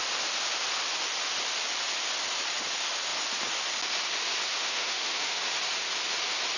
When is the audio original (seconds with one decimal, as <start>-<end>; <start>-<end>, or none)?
0.0-4.5; 5.4-6.6